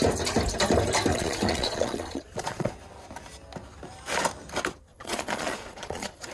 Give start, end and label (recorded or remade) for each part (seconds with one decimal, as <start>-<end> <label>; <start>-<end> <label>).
0.0-1.1 recorded; 1.1-2.7 remade; 2.7-4.9 recorded; 4.9-6.3 remade